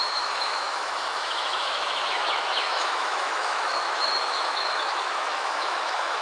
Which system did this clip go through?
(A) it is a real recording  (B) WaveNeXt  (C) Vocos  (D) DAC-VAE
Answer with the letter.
D